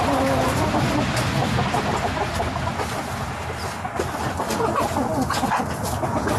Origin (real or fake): real